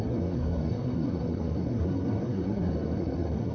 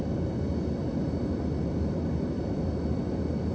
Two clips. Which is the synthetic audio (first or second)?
first